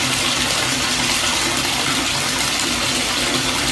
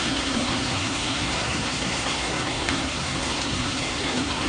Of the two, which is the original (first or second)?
first